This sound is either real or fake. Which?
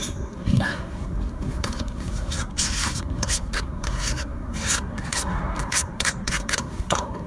fake